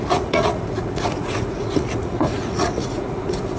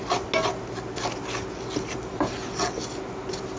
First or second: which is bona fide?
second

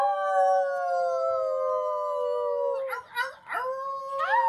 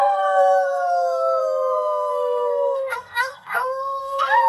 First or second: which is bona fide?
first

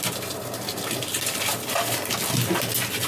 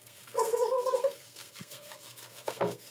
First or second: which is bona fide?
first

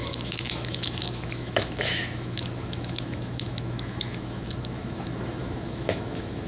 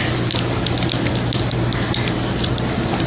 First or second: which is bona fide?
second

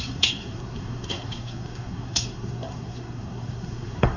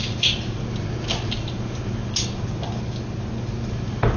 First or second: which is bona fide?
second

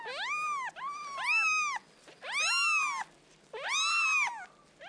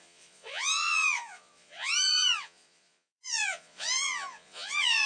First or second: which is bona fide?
first